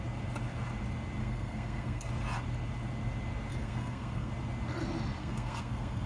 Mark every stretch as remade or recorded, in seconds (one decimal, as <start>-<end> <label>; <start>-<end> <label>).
0.0-1.2 recorded; 1.2-2.1 remade; 2.1-3.5 recorded; 3.5-4.3 remade; 4.3-5.2 recorded; 5.2-6.1 remade